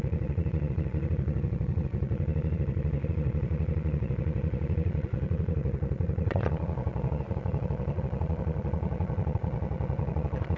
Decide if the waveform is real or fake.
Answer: fake